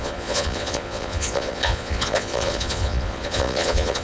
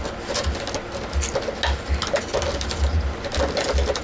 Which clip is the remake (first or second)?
first